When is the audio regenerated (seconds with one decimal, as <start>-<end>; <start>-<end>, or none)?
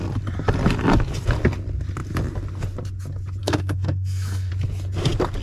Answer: 3.4-4.5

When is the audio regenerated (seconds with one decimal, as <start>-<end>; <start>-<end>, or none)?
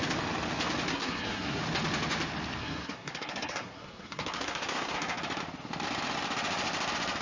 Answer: 0.9-1.6; 2.6-5.2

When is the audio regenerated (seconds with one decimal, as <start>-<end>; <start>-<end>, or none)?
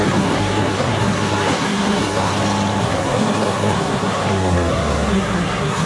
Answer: 0.0-2.3; 2.8-5.9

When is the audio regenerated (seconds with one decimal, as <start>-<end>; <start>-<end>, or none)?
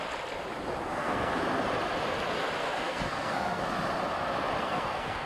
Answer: 0.9-1.4; 2.6-3.6; 4.6-5.3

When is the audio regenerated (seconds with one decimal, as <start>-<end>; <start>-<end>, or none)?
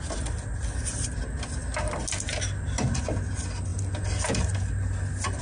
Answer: none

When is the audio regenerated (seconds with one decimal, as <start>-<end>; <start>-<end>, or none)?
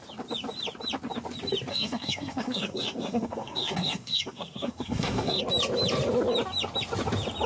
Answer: 1.7-5.4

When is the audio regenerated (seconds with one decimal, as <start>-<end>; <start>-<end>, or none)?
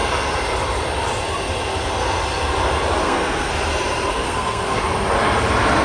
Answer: 3.0-3.5; 4.1-4.8